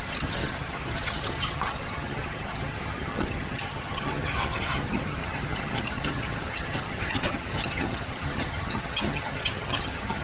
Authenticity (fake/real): fake